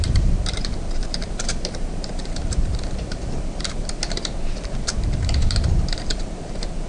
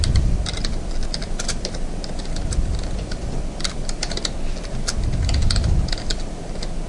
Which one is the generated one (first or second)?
first